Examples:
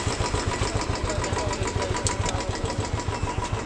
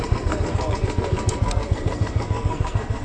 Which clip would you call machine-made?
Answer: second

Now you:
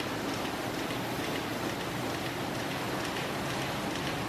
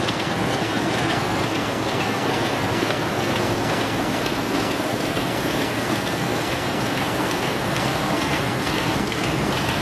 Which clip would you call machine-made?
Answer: second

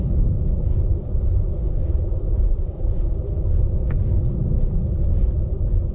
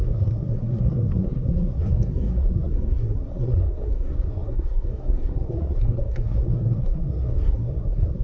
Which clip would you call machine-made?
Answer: second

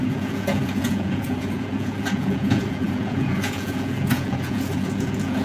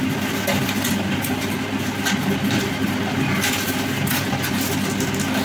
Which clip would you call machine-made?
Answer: first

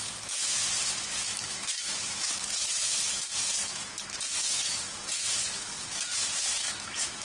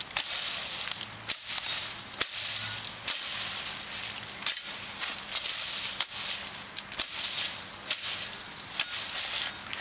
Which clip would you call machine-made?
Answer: first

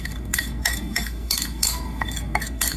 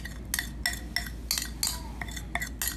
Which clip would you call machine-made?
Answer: first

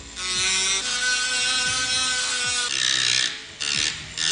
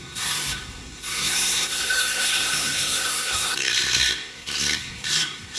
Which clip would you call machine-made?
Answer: second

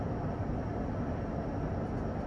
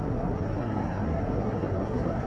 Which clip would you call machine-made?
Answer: second